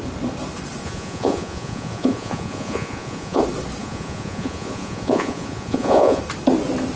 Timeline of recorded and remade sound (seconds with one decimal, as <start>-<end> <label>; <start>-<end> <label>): 0.0-0.8 recorded; 0.8-3.4 remade; 3.4-3.8 recorded; 3.8-6.2 remade; 6.2-7.0 recorded